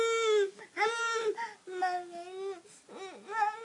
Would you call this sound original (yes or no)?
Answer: yes